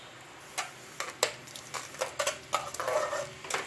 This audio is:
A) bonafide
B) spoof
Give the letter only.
A